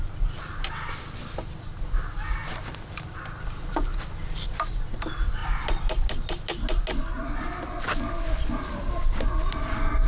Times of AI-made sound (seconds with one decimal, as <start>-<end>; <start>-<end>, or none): none